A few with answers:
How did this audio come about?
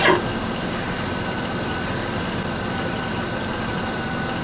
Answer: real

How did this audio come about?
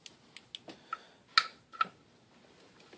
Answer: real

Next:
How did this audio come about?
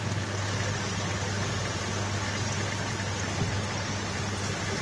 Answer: real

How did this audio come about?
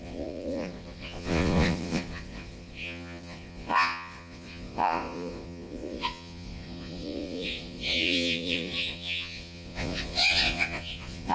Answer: fake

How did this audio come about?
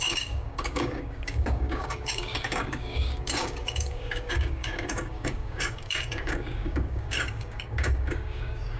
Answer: fake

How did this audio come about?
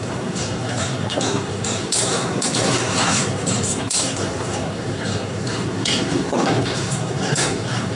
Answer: fake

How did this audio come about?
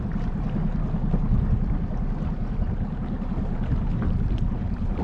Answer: real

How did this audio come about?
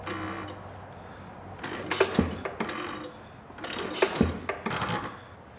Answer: real